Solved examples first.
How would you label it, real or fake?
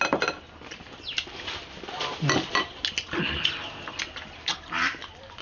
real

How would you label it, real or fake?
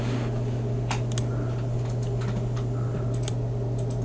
real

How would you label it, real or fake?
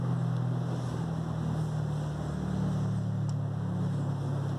real